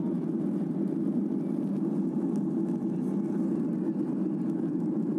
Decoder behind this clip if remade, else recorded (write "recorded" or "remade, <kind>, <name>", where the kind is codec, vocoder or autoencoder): recorded